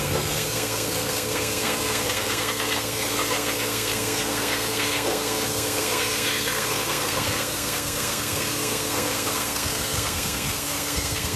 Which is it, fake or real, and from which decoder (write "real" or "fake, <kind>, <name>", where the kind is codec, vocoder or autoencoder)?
fake, codec, SNAC